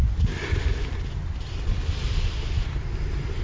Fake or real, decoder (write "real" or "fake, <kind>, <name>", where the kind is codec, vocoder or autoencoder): real